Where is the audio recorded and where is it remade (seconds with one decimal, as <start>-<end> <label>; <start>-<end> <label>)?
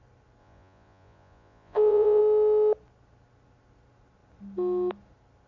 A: 0.0-0.4 recorded; 0.4-2.2 remade; 2.2-5.5 recorded